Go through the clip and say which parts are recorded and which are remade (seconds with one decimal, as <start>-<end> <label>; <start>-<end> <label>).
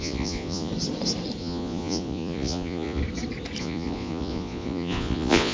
0.0-0.7 remade; 0.7-1.4 recorded; 1.4-3.0 remade; 3.0-3.6 recorded; 3.6-5.5 remade